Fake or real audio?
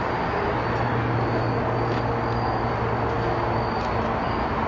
real